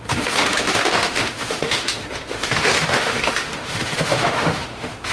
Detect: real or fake fake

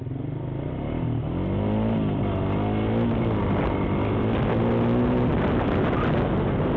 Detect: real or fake real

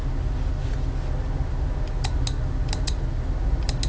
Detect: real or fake real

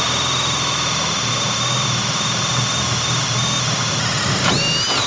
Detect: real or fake real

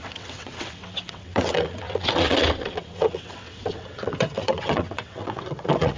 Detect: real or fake fake